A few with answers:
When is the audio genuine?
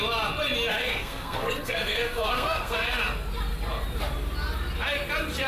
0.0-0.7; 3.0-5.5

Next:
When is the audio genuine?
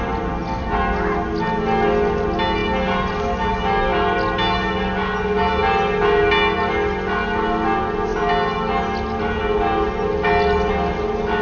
0.0-11.4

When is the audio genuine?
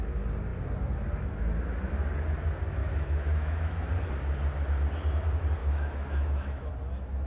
0.0-2.8; 3.9-5.6; 6.7-7.3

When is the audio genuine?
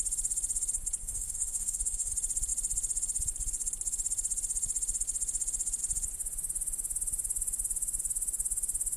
0.0-1.0; 2.1-9.0